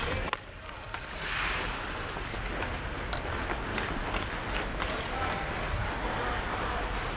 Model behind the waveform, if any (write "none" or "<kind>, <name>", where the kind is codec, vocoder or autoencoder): none